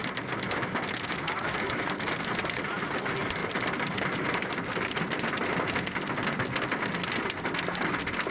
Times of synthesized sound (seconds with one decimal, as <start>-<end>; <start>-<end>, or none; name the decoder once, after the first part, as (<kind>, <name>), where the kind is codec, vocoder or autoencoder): 3.4-5.0 (vocoder, BigVGAN v2)